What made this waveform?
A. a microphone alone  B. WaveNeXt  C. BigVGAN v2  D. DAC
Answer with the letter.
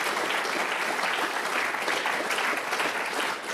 A